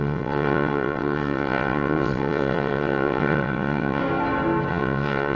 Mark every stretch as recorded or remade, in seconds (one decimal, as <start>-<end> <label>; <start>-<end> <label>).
0.0-4.0 remade; 4.0-4.7 recorded; 4.7-5.3 remade